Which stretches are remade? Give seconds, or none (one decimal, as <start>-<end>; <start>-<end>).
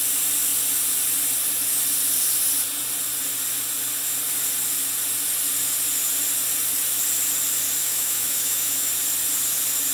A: 7.8-8.9